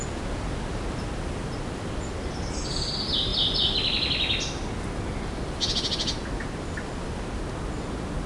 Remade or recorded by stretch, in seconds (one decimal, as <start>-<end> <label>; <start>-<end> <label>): 0.0-6.2 recorded; 6.2-7.4 remade; 7.4-8.3 recorded